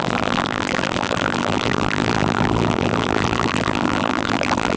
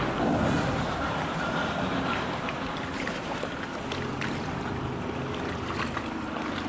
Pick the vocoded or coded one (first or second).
first